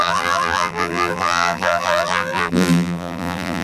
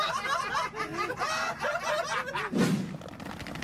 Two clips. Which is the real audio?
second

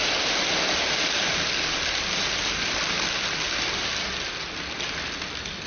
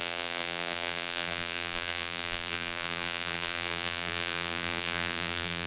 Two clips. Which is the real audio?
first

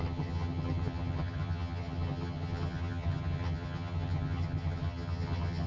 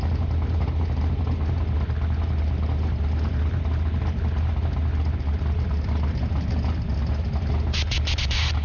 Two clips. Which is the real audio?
second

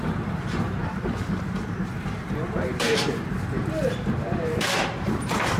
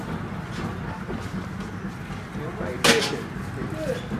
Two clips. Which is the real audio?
second